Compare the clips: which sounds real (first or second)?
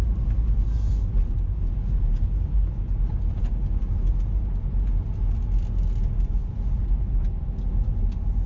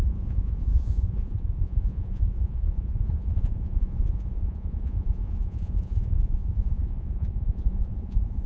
first